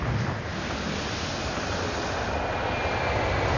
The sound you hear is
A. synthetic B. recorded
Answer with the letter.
B